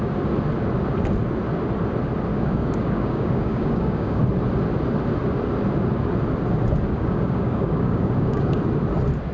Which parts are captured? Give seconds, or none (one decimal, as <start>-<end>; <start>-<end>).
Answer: 0.0-2.3; 4.2-6.9; 8.6-9.3